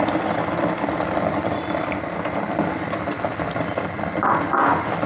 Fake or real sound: real